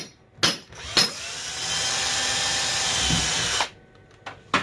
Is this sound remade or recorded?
recorded